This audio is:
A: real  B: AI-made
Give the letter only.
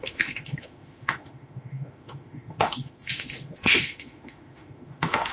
B